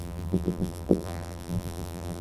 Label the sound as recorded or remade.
remade